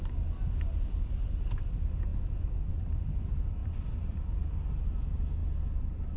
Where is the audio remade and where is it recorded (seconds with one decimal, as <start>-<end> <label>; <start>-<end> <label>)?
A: 0.0-5.4 recorded; 5.4-6.2 remade